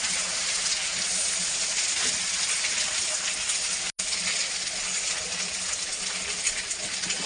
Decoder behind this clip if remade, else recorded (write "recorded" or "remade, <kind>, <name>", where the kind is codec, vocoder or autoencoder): recorded